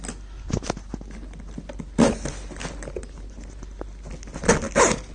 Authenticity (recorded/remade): recorded